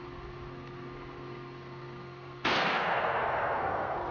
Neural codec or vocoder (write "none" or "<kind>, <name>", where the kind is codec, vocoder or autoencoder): codec, SNAC